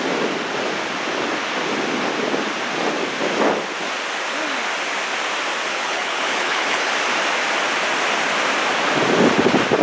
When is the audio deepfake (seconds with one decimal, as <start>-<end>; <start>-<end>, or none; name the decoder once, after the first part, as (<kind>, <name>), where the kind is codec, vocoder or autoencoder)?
5.7-6.9 (codec, HILCodec)